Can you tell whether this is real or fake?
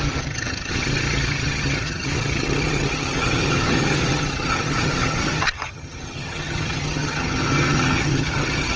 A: fake